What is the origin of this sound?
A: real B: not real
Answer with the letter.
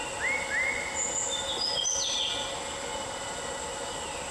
A